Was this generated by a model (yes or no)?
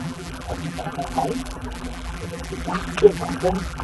yes